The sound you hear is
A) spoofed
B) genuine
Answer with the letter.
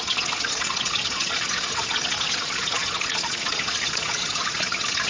A